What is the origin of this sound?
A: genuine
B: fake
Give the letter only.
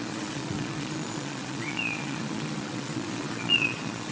B